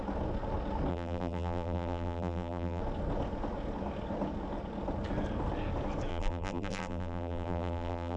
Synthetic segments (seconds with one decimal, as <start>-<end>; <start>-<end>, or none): 0.9-2.8; 6.1-8.2